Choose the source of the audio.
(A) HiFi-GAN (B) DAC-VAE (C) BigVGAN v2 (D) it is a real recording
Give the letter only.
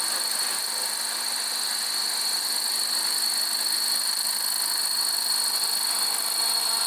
C